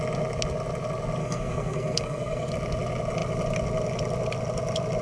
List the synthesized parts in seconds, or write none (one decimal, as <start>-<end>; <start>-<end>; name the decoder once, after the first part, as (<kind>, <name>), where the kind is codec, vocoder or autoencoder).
1.2-2.5 (codec, SNAC)